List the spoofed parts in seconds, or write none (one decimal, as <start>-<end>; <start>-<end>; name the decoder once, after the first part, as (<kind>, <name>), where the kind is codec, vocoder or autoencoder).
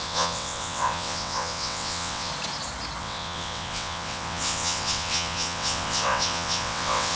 0.0-2.3 (vocoder, WaveNeXt); 3.0-7.2